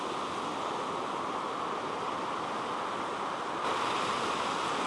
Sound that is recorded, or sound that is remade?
recorded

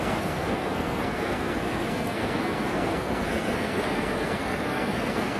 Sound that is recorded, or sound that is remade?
remade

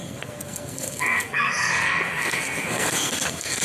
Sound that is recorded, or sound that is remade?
remade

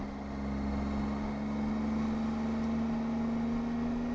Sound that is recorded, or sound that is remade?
recorded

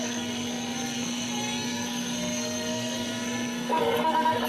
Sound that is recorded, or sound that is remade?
remade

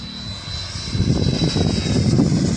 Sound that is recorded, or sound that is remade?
recorded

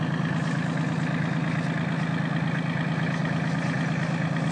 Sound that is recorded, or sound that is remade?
recorded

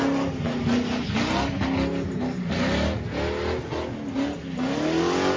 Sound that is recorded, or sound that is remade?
recorded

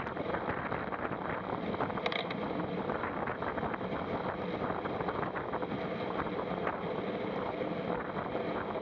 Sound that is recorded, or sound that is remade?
recorded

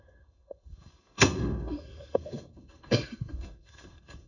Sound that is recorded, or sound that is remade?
remade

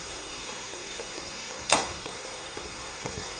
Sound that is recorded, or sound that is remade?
remade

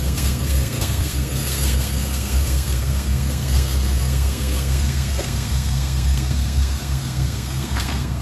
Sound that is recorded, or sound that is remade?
remade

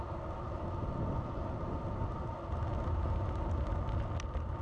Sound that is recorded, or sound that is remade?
recorded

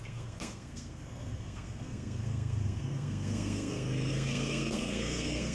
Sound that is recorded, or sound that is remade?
remade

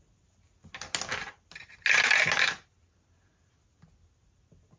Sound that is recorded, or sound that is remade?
recorded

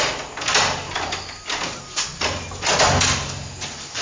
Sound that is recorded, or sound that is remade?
recorded